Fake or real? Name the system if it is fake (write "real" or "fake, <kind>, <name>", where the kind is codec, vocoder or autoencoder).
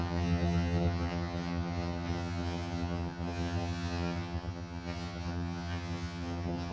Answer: fake, vocoder, HiFi-GAN